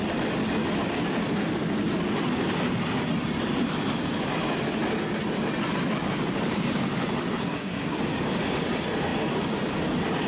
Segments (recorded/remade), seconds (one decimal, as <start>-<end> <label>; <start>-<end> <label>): 0.0-7.4 recorded; 7.4-8.0 remade; 8.0-10.3 recorded